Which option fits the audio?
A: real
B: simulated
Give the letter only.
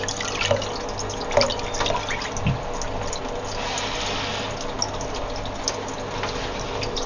A